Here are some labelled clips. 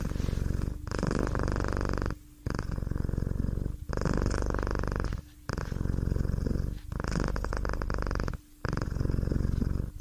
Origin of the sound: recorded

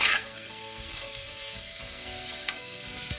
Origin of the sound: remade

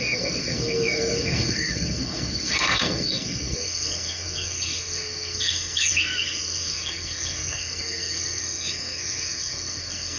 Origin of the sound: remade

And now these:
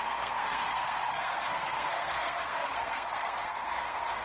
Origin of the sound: remade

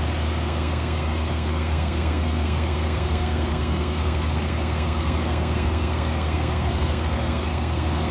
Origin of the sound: remade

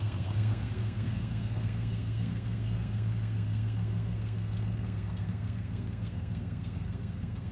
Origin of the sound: remade